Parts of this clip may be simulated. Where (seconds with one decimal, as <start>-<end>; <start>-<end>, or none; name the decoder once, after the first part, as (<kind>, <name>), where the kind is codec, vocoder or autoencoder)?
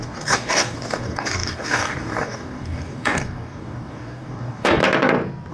0.0-4.8 (codec, DAC)